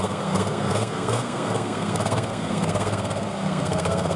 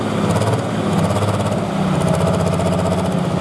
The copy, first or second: first